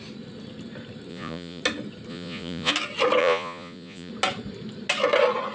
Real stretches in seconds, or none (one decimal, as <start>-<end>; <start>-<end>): 0.0-1.1; 1.6-2.1; 2.7-3.2; 4.1-5.5